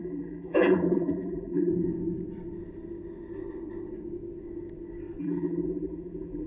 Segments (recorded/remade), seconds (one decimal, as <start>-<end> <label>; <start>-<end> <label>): 0.0-1.7 remade; 1.7-5.2 recorded; 5.2-6.5 remade